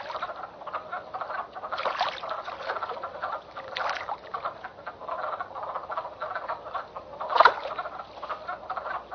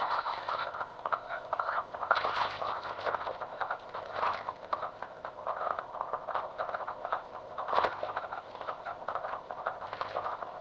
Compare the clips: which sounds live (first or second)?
first